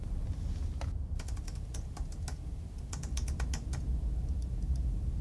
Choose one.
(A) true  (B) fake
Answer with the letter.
A